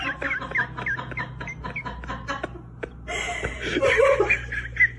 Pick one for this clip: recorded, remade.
recorded